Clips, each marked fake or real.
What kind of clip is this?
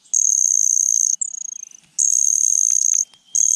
real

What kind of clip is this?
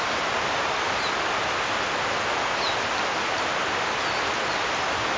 real